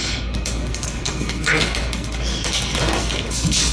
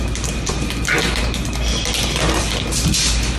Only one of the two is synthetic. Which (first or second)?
first